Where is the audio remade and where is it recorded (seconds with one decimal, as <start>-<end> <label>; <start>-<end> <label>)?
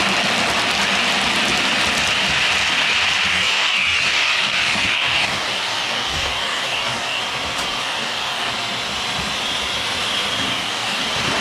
0.0-3.3 recorded; 3.3-7.2 remade; 7.2-7.8 recorded; 7.8-8.5 remade; 8.5-10.5 recorded; 10.5-11.0 remade; 11.0-11.4 recorded